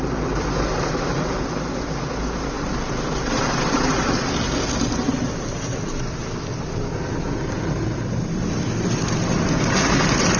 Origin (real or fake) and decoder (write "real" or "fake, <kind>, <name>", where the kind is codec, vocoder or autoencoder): real